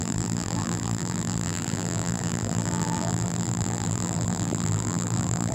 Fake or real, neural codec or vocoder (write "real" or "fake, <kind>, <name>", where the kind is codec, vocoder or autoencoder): fake, vocoder, BigVGAN v2